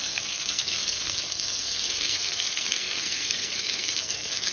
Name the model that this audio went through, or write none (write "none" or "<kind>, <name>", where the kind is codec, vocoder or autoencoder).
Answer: codec, SNAC